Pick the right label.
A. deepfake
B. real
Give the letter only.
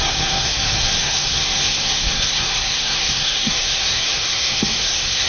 A